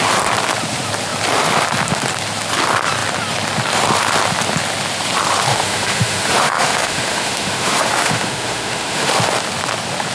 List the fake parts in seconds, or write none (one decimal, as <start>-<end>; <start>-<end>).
5.5-9.1